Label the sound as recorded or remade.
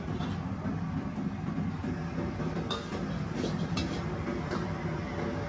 recorded